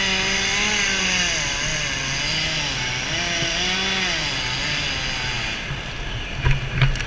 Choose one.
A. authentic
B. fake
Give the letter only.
A